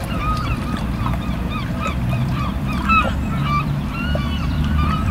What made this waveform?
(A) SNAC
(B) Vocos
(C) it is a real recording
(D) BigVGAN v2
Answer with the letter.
D